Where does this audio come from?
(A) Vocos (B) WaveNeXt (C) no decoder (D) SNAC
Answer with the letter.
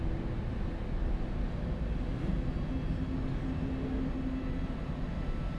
C